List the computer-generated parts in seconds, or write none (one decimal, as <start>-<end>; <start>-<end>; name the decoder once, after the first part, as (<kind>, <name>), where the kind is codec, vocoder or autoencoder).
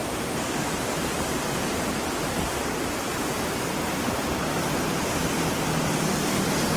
0.0-1.6 (vocoder, BigVGAN v2); 3.1-5.1